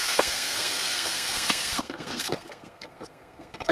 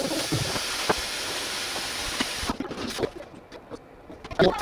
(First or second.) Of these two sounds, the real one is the second